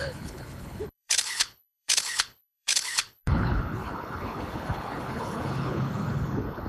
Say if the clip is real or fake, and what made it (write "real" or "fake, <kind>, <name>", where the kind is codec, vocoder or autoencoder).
fake, codec, HILCodec